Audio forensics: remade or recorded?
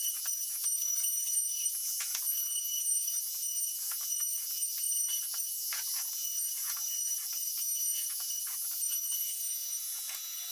remade